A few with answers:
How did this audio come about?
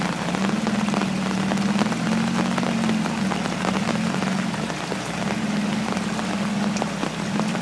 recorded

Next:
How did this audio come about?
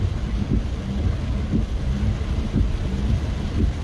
recorded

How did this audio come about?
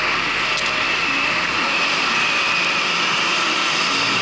recorded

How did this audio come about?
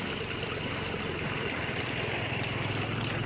recorded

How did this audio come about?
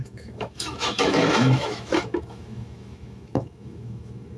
remade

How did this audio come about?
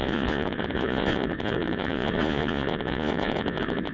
remade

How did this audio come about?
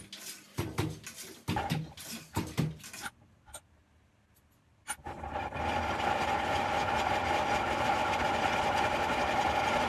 recorded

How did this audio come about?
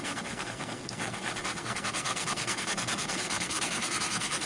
remade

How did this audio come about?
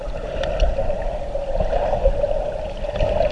recorded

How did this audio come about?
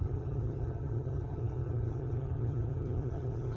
remade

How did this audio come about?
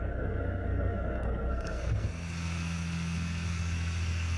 remade